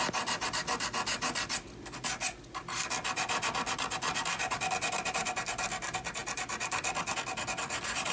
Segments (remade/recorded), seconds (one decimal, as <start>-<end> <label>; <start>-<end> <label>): 0.0-8.1 recorded